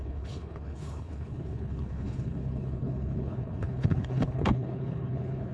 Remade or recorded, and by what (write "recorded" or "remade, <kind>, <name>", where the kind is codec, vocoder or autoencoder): remade, codec, HILCodec